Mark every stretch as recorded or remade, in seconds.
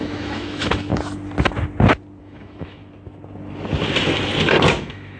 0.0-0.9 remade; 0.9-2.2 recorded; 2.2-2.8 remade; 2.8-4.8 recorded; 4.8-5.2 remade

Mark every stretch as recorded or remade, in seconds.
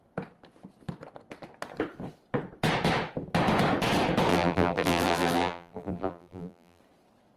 0.0-4.3 recorded; 4.3-6.8 remade; 6.8-7.4 recorded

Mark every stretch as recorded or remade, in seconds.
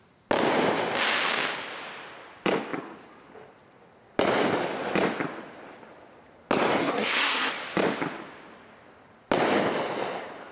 0.0-6.8 recorded; 6.8-7.5 remade; 7.5-10.5 recorded